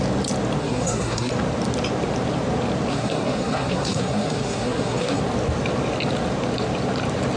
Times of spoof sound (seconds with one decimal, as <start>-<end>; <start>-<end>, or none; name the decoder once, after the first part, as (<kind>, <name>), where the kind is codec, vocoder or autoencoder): 0.6-1.3 (codec, SNAC); 2.9-5.2